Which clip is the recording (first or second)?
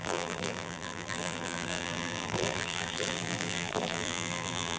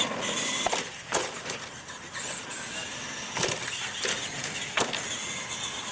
second